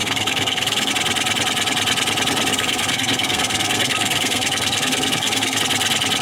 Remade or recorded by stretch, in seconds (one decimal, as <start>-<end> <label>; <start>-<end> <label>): 0.0-0.9 remade; 0.9-2.5 recorded; 2.5-5.6 remade; 5.6-6.2 recorded